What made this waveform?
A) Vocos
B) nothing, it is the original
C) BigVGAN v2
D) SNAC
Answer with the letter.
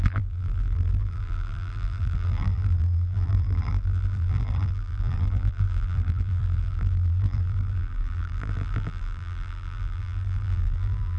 C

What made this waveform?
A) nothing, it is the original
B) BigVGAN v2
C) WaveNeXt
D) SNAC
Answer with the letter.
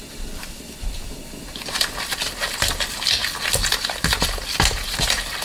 B